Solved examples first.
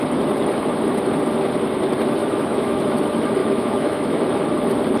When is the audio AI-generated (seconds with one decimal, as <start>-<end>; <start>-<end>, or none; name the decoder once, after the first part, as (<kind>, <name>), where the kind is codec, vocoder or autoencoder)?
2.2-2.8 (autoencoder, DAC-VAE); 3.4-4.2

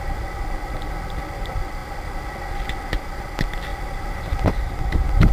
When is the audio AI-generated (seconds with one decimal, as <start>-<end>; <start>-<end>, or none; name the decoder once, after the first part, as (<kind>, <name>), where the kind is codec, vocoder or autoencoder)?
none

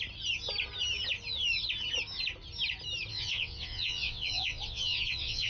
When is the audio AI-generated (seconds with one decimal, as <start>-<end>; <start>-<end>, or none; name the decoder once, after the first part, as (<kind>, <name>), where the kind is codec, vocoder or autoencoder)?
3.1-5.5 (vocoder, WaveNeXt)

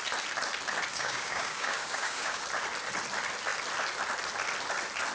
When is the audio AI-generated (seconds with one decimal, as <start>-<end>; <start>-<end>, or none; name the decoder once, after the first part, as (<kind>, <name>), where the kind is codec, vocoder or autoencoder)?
0.9-2.4 (codec, DAC)

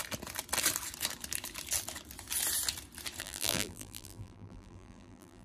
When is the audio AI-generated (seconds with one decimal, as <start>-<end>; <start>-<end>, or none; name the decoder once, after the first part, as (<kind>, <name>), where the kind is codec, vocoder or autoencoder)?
3.2-5.4 (vocoder, BigVGAN v2)

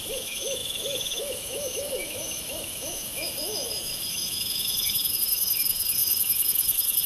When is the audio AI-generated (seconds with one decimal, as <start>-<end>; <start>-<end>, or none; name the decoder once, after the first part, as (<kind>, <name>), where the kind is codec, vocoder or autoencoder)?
0.0-7.1 (autoencoder, DAC-VAE)

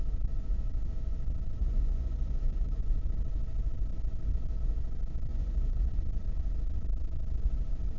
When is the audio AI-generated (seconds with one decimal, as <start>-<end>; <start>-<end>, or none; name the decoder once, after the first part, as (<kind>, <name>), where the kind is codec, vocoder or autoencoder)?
1.6-2.8 (vocoder, Vocos); 5.3-5.9